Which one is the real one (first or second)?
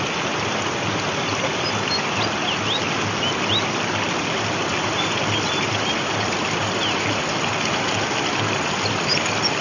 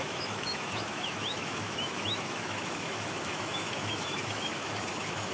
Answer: first